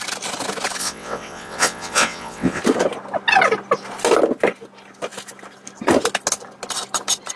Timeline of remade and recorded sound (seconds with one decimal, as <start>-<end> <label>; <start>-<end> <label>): 0.0-0.8 recorded; 0.8-2.6 remade; 2.6-7.4 recorded